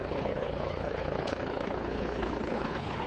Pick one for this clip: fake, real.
fake